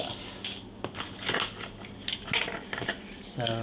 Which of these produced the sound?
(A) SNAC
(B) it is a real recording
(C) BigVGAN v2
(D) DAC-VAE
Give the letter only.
B